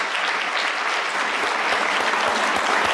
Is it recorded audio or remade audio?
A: recorded